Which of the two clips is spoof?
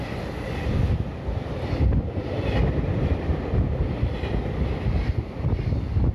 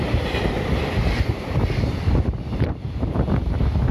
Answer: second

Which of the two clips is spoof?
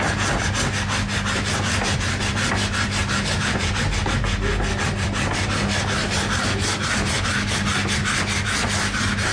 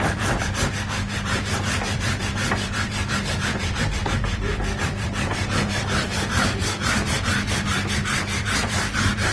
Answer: second